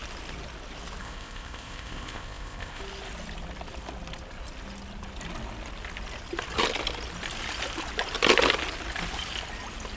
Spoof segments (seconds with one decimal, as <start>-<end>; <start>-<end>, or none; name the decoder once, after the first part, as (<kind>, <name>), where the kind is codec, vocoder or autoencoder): 1.0-2.8 (codec, ZipCodec)